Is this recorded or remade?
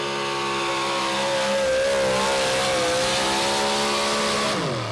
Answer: recorded